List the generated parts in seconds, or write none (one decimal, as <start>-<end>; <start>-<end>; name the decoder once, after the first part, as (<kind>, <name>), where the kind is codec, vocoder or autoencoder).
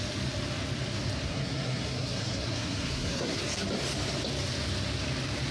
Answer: 1.3-3.4 (codec, SNAC)